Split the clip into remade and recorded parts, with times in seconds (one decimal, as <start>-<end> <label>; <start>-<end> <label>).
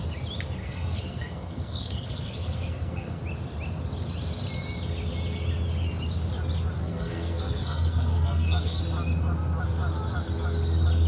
0.0-0.6 recorded; 0.6-3.2 remade; 3.2-6.8 recorded; 6.8-8.8 remade; 8.8-11.1 recorded